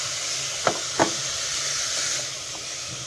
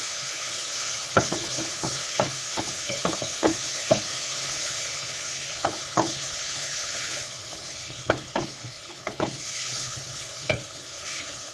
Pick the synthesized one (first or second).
second